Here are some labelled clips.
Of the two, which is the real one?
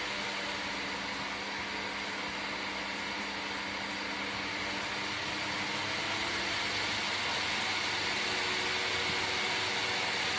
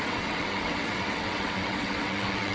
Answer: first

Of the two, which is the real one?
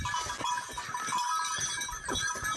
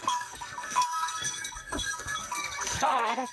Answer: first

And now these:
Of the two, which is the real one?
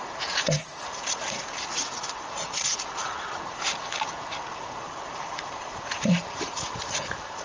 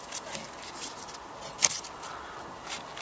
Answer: second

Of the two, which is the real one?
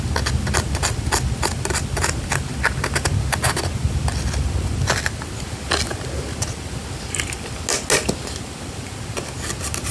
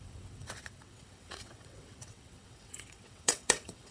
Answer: first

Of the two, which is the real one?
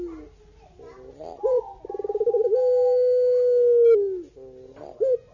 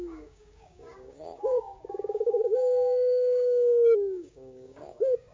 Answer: first